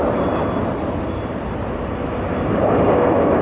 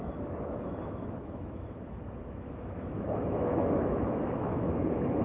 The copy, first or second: second